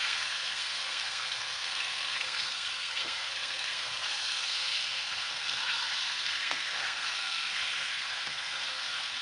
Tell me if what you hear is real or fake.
fake